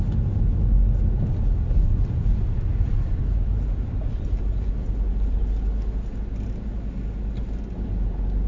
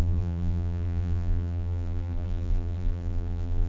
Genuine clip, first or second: first